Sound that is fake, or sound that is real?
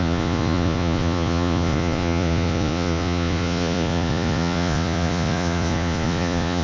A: fake